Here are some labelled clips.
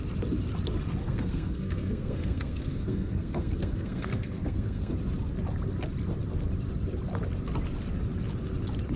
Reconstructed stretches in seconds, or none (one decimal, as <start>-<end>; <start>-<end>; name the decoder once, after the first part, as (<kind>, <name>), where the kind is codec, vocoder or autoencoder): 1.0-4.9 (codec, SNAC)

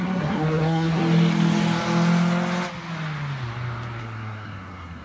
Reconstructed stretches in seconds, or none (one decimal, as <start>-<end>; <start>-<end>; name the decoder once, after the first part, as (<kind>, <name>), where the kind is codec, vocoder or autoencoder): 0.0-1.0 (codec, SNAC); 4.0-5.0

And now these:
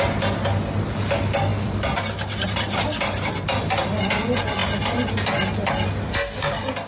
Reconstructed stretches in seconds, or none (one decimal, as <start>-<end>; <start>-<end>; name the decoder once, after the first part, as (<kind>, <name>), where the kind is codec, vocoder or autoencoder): none